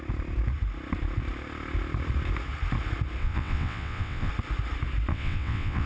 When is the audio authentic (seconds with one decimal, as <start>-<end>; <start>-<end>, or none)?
0.0-3.2; 4.3-5.1